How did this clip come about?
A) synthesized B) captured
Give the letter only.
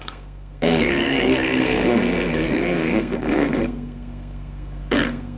A